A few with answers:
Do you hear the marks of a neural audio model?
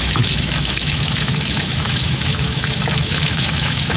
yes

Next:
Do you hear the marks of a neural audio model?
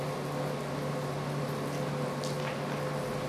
no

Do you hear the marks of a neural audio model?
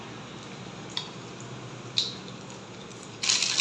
no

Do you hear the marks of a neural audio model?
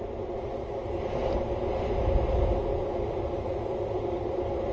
no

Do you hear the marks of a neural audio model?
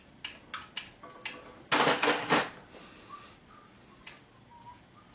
no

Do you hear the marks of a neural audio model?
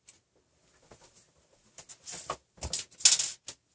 no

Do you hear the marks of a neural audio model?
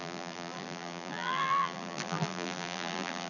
yes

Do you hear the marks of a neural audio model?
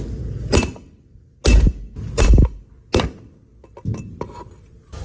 no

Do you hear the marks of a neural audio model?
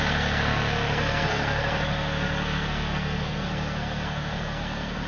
yes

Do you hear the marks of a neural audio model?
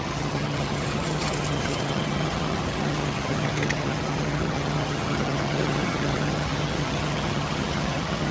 yes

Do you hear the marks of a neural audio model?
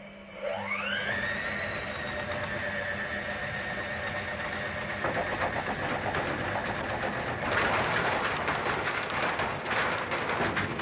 no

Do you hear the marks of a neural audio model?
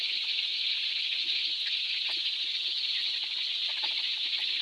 no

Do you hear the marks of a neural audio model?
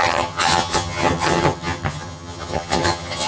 yes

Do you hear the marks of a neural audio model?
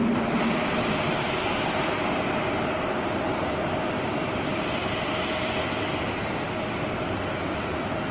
no